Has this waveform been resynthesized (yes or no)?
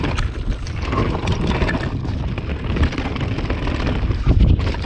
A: no